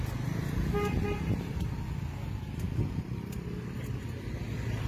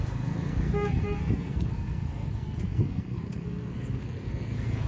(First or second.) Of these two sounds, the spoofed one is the second